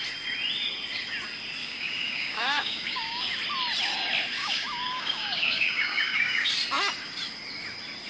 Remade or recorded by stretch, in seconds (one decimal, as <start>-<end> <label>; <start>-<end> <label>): 0.0-1.6 recorded; 1.6-3.2 remade; 3.2-4.4 recorded; 4.4-6.5 remade; 6.5-8.1 recorded